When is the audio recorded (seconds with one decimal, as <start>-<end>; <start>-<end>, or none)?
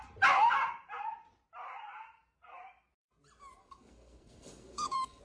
0.0-3.6